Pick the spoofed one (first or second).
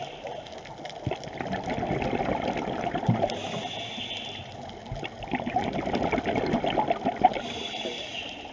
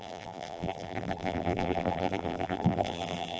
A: second